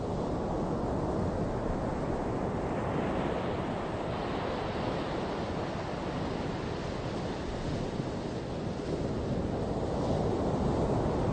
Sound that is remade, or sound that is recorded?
recorded